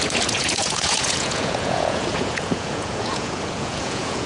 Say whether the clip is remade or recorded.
remade